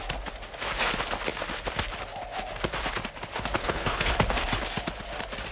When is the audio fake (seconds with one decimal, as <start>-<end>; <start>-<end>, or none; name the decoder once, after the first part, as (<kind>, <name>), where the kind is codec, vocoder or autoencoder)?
3.6-4.1 (codec, HILCodec)